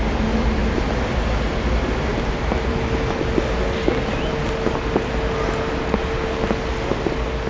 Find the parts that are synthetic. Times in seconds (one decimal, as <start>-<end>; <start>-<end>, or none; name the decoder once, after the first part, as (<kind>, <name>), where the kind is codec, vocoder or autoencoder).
none